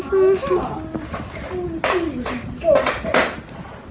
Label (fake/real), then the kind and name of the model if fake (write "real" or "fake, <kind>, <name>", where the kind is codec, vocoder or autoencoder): real